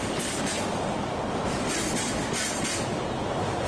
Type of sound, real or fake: real